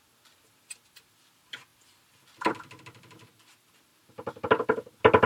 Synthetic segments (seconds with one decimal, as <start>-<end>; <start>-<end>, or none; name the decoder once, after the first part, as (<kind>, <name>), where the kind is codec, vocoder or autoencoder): 1.7-2.8 (vocoder, BigVGAN v2)